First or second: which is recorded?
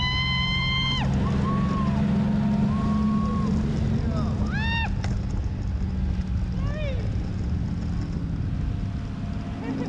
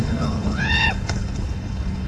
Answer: first